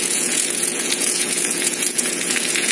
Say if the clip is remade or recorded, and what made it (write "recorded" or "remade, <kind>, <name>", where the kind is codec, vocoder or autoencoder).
remade, vocoder, Vocos